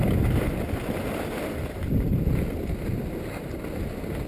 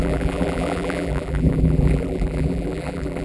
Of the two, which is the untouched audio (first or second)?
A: first